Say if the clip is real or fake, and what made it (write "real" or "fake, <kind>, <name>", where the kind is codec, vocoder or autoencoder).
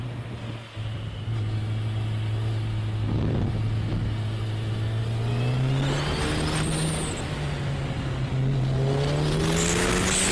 real